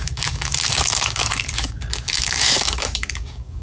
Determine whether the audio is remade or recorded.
remade